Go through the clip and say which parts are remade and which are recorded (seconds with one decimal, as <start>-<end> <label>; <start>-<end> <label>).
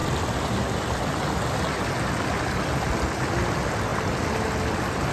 0.0-5.1 recorded